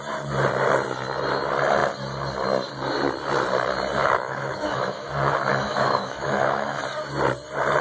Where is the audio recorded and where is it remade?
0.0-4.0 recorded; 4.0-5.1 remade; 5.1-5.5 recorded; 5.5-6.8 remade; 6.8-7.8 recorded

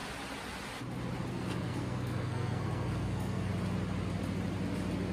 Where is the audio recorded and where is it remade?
0.0-1.3 recorded; 1.3-3.5 remade; 3.5-5.1 recorded